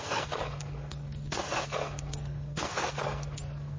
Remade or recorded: remade